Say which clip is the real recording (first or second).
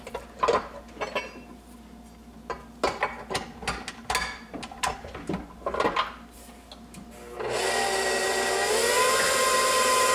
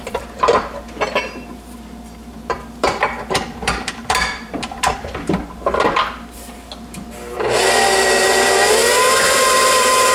first